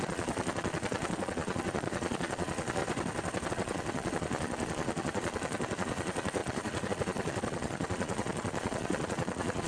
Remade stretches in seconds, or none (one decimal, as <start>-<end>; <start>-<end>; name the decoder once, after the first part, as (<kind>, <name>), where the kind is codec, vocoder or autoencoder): 0.0-2.8 (vocoder, Vocos); 3.5-9.7